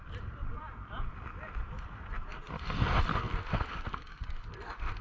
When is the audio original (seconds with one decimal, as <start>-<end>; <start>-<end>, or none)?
0.0-3.1